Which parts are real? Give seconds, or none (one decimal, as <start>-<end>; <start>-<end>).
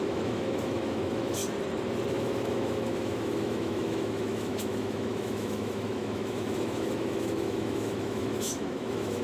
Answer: 1.4-2.1